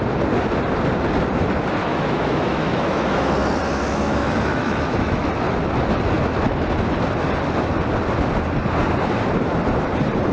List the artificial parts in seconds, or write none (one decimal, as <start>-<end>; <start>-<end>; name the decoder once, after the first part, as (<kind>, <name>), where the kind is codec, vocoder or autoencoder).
1.8-3.3 (autoencoder, DAC-VAE); 3.8-5.3